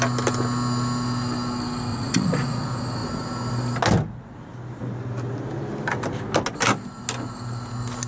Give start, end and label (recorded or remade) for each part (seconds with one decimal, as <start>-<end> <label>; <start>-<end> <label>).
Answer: 0.0-1.9 recorded; 1.9-2.6 remade; 2.6-8.1 recorded